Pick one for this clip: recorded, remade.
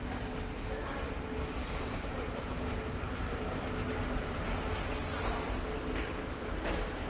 recorded